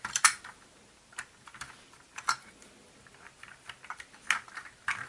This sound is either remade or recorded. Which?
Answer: recorded